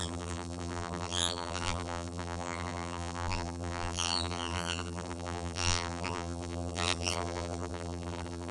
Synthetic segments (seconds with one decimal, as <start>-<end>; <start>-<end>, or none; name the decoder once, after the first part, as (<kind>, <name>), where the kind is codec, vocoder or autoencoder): 0.0-8.5 (vocoder, BigVGAN v2)